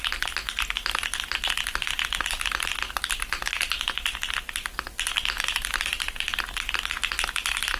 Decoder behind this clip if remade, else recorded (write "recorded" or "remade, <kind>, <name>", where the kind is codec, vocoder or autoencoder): recorded